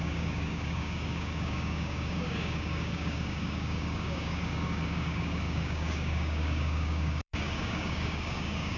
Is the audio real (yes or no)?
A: no